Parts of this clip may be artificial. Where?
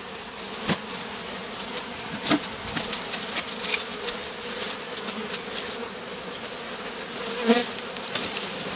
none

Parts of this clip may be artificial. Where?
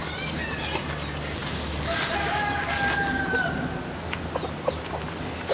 0.8-1.4; 4.7-5.5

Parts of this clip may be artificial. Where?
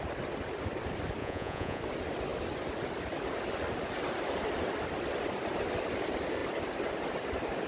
1.2-1.8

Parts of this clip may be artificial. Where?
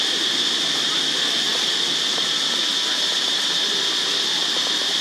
none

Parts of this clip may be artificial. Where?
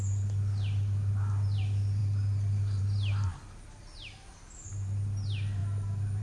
none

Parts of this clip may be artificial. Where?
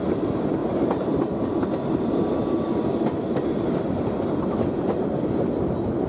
none